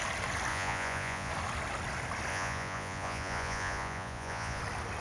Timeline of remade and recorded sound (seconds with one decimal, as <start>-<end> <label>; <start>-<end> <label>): 0.0-0.5 recorded; 0.5-1.3 remade; 1.3-2.3 recorded; 2.3-4.6 remade; 4.6-5.0 recorded